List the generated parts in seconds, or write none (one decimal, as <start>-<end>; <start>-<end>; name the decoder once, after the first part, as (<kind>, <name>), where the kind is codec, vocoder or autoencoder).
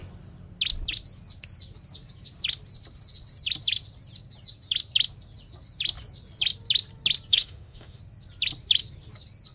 7.3-8.0 (autoencoder, DAC-VAE)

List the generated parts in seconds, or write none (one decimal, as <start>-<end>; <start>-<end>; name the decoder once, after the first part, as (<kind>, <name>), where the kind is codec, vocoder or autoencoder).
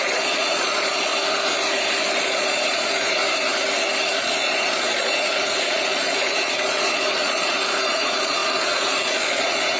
0.0-1.1 (vocoder, Vocos); 2.2-3.2; 4.2-9.8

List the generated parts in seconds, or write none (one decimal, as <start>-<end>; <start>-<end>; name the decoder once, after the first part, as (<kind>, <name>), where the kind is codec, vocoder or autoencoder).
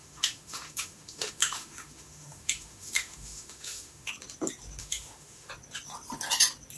0.0-4.1 (autoencoder, DAC-VAE); 4.8-5.5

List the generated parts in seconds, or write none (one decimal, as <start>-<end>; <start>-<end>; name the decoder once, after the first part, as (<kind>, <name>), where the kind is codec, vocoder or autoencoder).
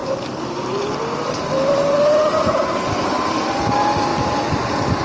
0.0-1.5 (vocoder, BigVGAN v2)